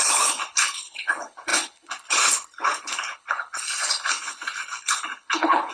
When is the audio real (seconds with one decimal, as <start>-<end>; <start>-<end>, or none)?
none